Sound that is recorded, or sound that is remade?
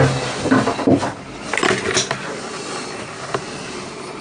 recorded